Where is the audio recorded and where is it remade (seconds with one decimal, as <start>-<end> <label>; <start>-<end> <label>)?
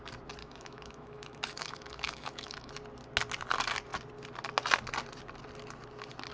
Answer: 0.0-0.4 recorded; 0.4-2.7 remade; 2.7-6.3 recorded